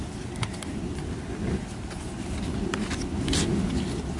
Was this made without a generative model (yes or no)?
yes